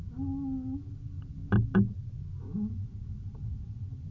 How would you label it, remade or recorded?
recorded